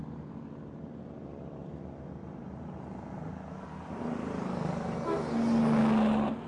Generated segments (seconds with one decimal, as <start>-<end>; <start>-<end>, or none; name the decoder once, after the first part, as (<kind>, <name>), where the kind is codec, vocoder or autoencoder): none